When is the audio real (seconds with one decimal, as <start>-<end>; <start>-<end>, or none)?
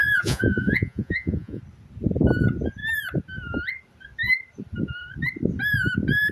1.6-6.3